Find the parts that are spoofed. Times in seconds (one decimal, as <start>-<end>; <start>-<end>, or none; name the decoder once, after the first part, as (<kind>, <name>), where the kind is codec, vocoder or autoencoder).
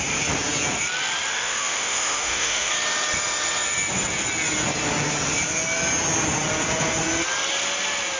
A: 1.3-2.7 (autoencoder, DAC-VAE)